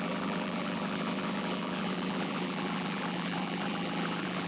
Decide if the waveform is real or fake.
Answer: fake